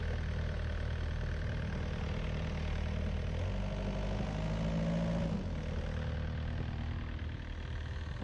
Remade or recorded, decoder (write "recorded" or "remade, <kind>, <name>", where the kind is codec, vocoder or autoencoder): recorded